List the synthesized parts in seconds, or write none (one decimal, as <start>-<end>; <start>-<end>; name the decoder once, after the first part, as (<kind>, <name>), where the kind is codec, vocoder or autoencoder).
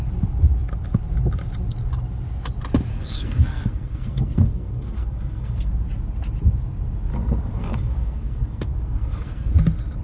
2.9-5.7 (codec, SNAC); 7.1-9.5